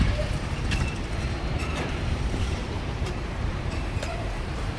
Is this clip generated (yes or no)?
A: yes